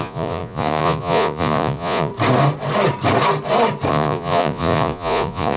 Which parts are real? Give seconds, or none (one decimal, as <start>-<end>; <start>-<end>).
2.1-3.9